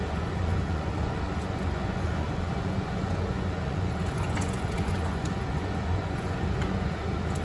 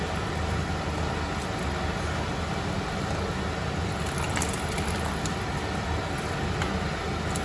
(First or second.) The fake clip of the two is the first